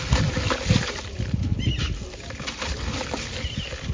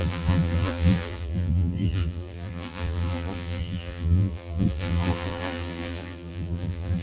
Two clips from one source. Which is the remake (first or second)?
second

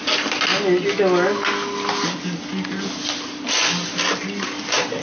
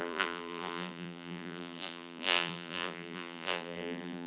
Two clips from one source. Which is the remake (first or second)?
second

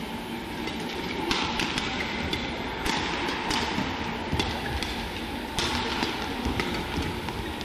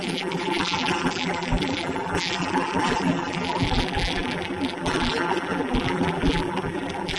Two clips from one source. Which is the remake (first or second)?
second